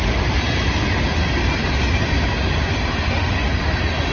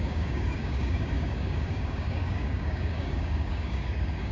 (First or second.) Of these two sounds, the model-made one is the second